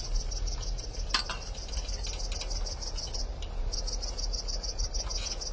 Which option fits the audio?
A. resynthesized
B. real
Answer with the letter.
B